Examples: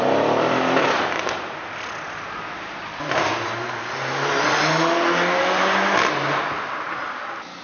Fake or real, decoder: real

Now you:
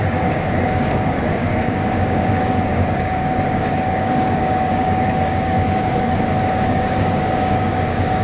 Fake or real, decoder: fake, codec, DAC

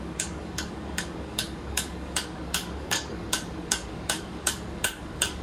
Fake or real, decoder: fake, codec, DAC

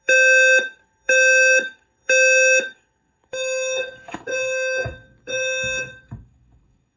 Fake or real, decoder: fake, codec, DAC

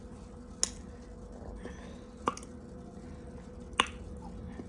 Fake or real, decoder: real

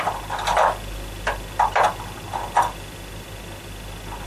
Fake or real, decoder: real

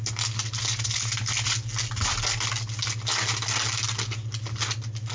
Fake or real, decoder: real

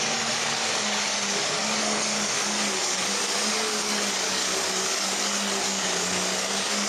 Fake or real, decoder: fake, codec, DAC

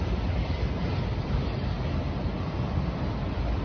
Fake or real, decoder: real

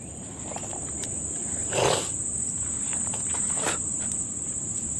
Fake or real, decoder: real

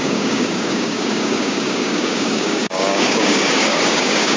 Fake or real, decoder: fake, codec, DAC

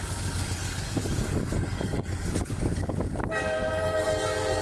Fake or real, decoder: fake, codec, DAC